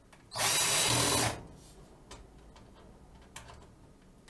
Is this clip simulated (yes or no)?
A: no